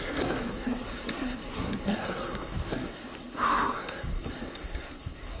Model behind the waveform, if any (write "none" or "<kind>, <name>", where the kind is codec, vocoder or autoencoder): codec, SNAC